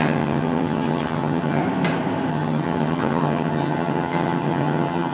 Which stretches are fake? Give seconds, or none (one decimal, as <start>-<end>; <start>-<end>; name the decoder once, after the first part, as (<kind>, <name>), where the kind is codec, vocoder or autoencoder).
0.0-1.6 (vocoder, HiFi-GAN); 2.3-5.1